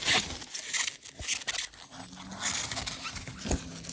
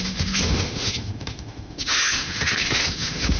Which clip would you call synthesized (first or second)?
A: second